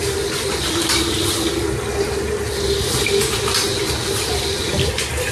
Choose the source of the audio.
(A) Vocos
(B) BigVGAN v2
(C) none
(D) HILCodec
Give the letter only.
C